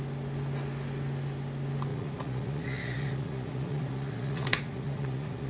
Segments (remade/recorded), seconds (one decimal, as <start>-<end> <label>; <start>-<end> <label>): 0.0-1.9 recorded; 1.9-5.5 remade